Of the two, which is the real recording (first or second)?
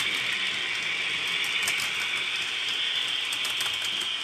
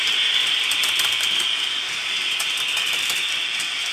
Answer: first